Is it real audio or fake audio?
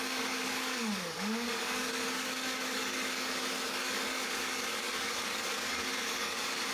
fake